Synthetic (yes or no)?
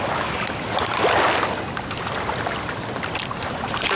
no